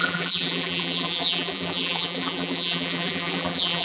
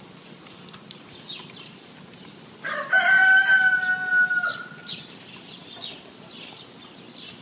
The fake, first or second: first